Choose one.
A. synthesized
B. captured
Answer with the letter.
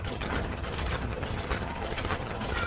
A